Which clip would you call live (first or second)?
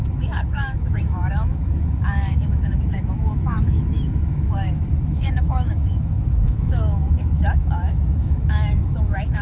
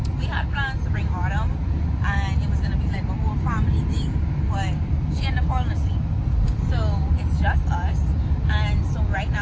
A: second